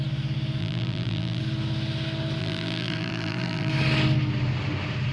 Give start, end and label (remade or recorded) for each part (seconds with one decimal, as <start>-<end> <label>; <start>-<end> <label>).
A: 0.0-0.6 recorded; 0.6-1.4 remade; 1.4-2.4 recorded; 2.4-3.7 remade; 3.7-5.1 recorded